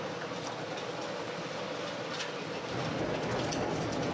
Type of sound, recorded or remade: recorded